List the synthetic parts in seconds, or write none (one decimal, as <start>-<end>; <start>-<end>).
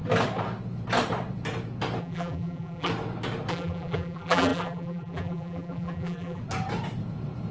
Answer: 2.0-2.9; 3.5-6.4